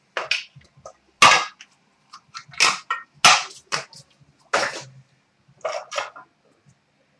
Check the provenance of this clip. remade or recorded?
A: recorded